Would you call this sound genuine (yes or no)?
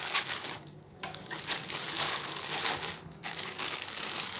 no